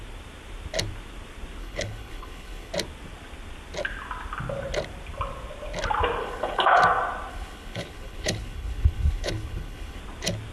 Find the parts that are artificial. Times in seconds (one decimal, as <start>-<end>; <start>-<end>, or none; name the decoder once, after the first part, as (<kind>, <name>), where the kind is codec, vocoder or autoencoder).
1.6-2.7 (codec, HILCodec); 6.2-6.8; 7.3-10.0